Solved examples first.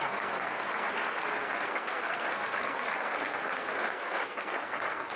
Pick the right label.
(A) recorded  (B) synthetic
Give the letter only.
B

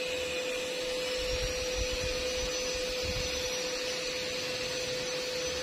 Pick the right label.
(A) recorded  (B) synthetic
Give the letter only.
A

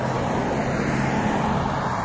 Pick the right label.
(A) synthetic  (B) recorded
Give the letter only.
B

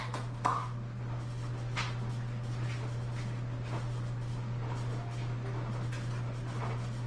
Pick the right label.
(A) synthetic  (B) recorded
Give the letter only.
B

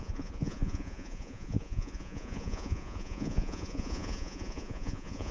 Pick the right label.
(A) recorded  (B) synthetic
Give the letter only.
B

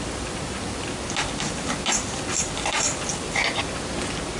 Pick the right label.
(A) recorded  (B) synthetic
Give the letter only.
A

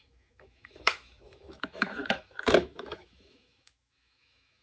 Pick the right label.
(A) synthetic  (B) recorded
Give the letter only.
A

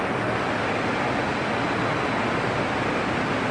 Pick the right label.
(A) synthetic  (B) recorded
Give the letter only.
B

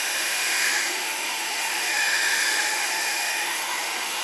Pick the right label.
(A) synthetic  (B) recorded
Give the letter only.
A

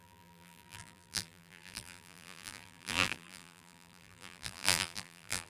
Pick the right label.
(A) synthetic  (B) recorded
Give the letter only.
A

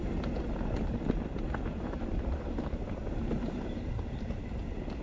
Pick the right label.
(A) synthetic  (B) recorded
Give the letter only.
B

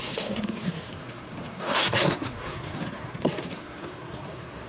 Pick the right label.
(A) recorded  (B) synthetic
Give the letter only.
B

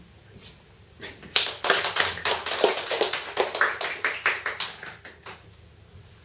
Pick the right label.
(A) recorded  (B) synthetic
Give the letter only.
A